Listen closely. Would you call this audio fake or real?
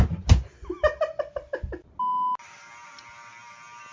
real